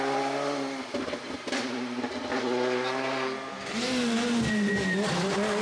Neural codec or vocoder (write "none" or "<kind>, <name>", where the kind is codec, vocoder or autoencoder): none